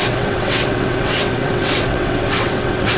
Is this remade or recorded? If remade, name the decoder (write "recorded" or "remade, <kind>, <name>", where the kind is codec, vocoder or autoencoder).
remade, vocoder, WaveNeXt